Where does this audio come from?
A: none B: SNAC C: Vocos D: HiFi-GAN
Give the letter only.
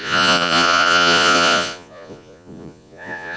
C